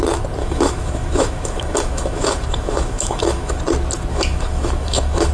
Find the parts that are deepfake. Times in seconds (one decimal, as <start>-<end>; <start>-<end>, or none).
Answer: 0.4-3.6; 4.1-5.3